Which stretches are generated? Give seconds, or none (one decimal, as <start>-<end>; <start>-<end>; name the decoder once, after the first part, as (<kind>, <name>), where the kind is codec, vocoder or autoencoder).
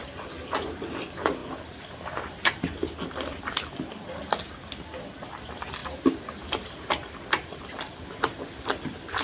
5.8-6.9 (vocoder, BigVGAN v2)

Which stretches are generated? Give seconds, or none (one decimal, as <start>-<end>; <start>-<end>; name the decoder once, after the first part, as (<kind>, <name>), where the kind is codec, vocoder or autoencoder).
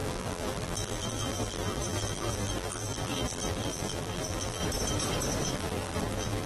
0.0-4.6 (vocoder, BigVGAN v2); 5.5-6.5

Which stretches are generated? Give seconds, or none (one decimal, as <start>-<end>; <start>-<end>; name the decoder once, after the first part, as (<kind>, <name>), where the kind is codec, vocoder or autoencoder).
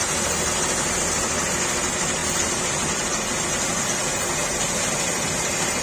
none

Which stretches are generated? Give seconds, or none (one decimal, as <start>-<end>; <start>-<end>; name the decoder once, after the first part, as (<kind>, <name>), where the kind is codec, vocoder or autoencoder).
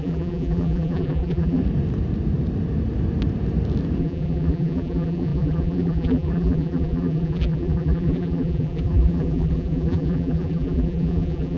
0.0-1.6 (vocoder, BigVGAN v2); 4.0-11.6